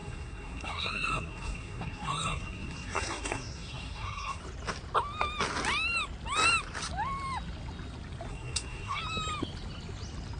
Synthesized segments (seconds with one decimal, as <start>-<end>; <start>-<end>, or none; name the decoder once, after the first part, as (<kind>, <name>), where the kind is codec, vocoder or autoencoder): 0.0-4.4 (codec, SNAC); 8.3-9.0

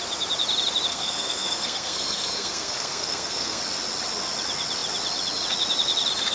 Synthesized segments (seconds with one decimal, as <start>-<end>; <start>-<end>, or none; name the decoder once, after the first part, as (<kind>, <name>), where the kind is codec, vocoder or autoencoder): 0.9-3.6 (codec, SNAC)

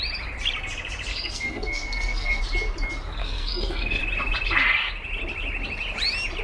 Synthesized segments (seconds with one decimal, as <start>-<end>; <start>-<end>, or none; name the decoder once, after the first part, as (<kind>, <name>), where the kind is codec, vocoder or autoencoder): 1.1-2.4 (codec, SNAC); 3.2-4.0

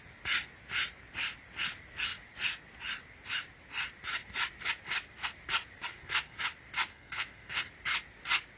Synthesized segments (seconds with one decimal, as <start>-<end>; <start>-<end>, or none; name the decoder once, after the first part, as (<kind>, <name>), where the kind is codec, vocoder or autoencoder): 5.9-6.4 (codec, SNAC); 6.9-7.7

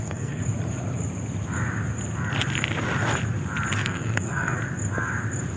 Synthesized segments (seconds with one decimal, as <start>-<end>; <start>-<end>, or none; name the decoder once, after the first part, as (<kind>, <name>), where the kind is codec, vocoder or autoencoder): 0.0-0.4 (codec, SNAC); 3.8-4.6

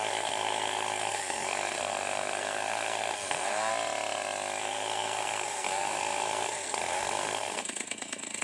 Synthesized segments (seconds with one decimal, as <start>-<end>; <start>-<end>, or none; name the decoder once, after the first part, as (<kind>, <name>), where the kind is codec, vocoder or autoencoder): 0.0-3.7 (codec, SNAC); 4.6-8.4